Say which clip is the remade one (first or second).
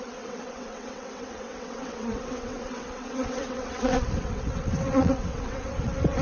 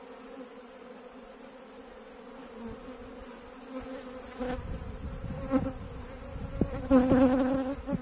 first